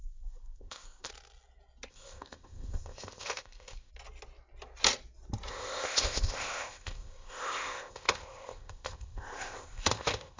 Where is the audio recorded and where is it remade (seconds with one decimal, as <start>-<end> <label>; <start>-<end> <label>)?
0.0-1.1 remade; 1.1-1.9 recorded; 1.9-3.9 remade; 3.9-5.5 recorded; 5.5-10.4 remade